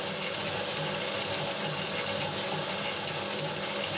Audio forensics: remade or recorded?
recorded